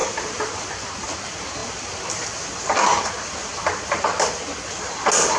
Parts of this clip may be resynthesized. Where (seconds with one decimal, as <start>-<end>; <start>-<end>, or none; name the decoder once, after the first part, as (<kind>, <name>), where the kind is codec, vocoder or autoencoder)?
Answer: none